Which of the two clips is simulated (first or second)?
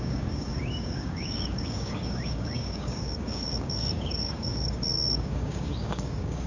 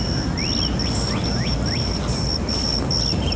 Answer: first